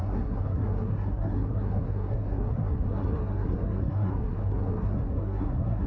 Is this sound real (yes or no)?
no